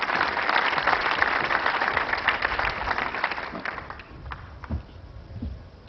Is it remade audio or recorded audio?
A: recorded